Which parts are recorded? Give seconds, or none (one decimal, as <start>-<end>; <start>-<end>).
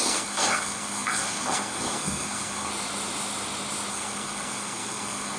2.7-3.9